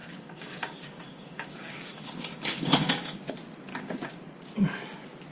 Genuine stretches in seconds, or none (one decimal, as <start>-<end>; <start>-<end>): 3.2-3.7; 4.2-5.3